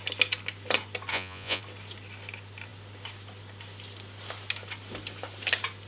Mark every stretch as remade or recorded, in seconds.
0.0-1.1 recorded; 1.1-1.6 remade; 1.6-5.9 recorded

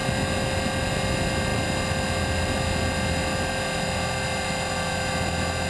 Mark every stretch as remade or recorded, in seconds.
0.0-5.7 recorded

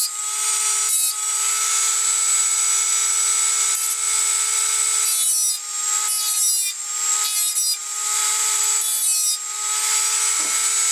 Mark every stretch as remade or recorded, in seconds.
0.0-7.8 recorded; 7.8-8.6 remade; 8.6-10.9 recorded

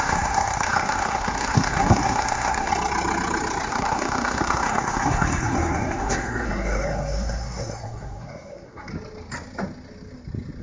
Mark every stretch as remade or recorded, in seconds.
0.0-2.7 remade; 2.7-3.7 recorded; 3.7-8.9 remade; 8.9-10.6 recorded

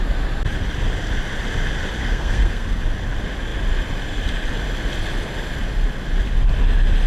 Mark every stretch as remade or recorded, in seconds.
0.0-2.0 recorded; 2.0-2.8 remade; 2.8-7.1 recorded